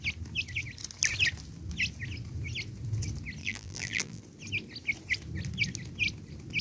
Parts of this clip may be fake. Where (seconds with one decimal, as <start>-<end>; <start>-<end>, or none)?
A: 3.4-4.2